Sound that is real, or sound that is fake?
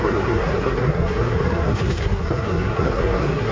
fake